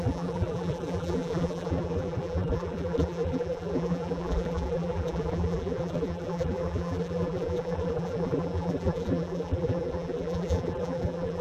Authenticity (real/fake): fake